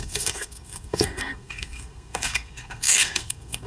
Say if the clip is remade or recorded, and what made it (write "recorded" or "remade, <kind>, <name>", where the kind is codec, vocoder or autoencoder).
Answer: remade, codec, SNAC